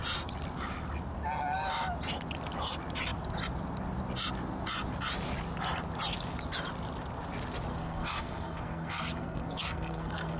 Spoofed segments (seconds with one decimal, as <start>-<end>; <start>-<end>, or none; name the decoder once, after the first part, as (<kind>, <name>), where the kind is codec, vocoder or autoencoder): 7.7-10.4 (codec, SNAC)